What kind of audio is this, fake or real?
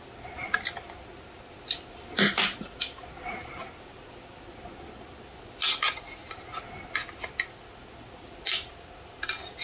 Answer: real